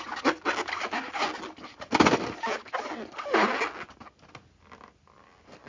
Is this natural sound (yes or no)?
yes